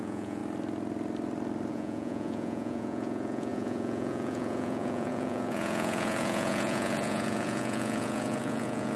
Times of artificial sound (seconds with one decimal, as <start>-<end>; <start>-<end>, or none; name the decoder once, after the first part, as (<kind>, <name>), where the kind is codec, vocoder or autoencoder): 0.0-0.4 (vocoder, Vocos); 1.7-9.0